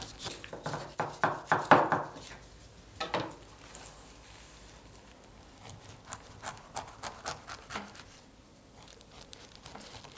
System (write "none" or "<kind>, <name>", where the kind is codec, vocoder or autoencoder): none